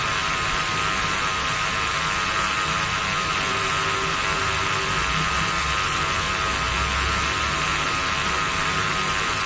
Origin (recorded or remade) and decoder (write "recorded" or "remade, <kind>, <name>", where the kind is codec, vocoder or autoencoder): recorded